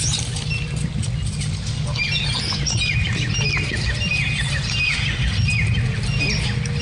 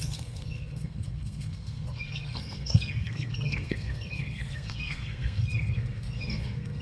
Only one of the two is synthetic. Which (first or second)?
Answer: second